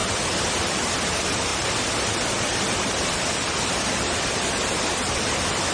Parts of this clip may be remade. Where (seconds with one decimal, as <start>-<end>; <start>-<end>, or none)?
none